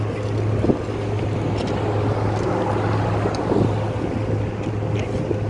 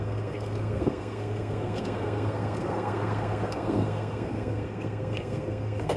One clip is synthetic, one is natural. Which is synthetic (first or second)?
second